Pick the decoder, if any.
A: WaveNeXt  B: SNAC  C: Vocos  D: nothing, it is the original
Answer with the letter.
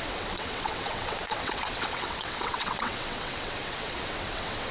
A